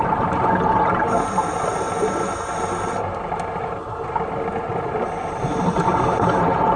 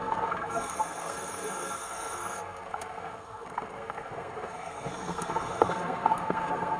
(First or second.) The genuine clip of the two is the first